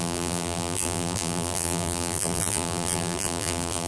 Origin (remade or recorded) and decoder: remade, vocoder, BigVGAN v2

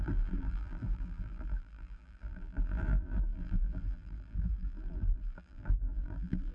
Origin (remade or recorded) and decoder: remade, vocoder, BigVGAN v2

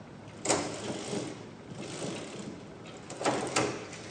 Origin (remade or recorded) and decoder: recorded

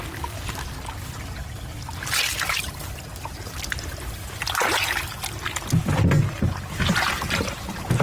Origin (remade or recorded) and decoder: recorded